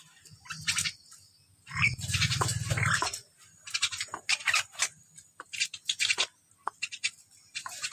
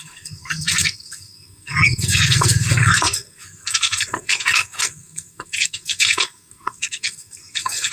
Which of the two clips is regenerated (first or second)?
second